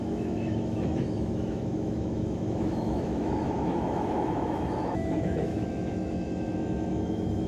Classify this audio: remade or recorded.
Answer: remade